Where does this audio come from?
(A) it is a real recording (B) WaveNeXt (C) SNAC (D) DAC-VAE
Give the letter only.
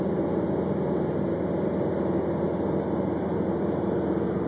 A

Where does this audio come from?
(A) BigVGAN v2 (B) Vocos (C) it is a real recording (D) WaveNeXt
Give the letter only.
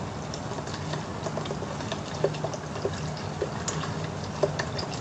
C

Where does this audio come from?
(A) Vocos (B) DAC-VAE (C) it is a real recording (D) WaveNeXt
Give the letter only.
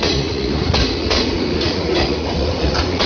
A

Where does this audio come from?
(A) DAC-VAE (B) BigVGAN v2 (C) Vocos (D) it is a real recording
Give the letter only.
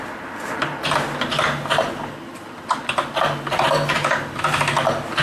D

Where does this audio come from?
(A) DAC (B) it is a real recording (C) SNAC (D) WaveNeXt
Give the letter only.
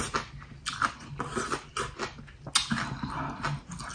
B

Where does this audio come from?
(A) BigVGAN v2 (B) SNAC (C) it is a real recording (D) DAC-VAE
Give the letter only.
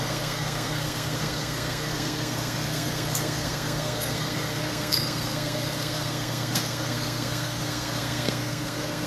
B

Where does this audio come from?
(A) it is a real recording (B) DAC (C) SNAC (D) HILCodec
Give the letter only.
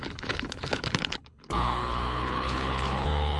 D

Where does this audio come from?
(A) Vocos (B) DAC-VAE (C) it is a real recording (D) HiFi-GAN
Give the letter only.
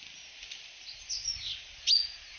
C